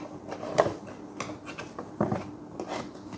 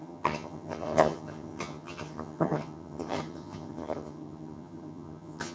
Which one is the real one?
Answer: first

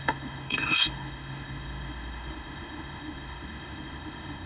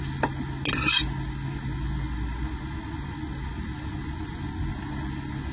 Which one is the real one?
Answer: second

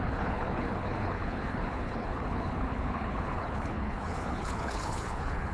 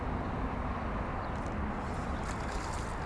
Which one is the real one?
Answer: second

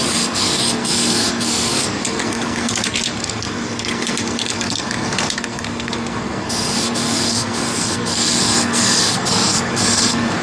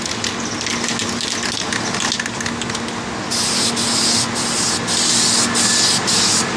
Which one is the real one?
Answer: second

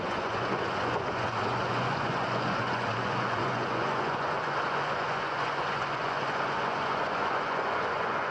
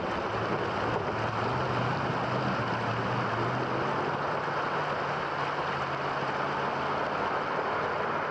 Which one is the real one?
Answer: second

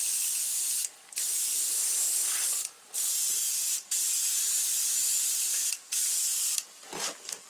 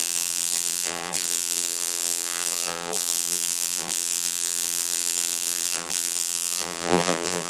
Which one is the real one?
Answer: first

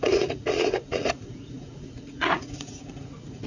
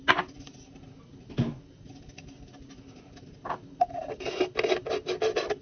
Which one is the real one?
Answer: second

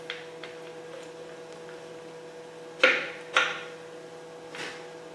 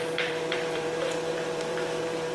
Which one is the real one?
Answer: first